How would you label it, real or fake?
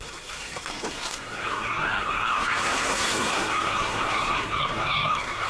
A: fake